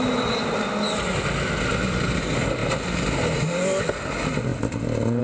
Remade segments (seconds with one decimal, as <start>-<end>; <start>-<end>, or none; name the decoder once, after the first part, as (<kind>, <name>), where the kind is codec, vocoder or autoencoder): none